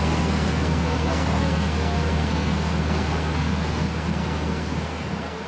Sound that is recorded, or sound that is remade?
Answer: remade